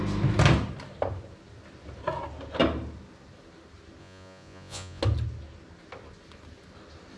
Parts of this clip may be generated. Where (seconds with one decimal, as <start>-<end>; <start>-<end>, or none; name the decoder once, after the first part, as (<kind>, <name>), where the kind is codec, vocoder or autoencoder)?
4.0-5.0 (vocoder, Vocos)